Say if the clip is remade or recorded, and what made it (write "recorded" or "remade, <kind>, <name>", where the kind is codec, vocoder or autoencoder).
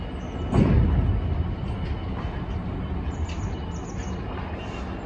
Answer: recorded